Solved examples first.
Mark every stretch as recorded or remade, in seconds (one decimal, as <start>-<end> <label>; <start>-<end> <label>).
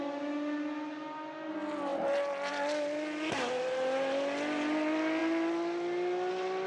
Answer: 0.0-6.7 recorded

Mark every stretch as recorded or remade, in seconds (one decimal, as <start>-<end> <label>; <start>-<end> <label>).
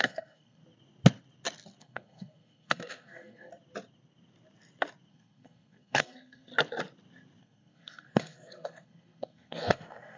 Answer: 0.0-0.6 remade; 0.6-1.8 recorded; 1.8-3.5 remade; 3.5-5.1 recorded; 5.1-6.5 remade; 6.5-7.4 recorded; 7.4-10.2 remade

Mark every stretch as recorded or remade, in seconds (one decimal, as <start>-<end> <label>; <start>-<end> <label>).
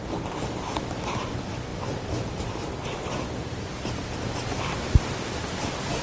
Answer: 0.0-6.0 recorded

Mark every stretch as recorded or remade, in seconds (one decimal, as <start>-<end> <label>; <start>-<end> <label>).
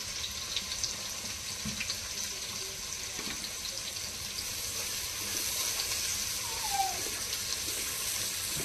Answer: 0.0-8.6 recorded